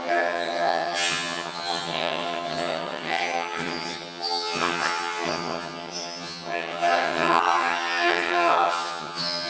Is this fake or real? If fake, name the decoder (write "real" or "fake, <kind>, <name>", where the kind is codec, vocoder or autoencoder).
fake, vocoder, HiFi-GAN